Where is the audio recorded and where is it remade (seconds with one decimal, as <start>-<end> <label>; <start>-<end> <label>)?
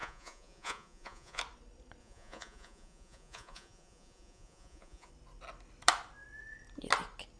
0.0-1.4 remade; 1.4-2.0 recorded; 2.0-5.1 remade; 5.1-7.4 recorded